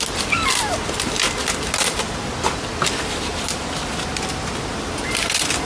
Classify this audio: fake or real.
real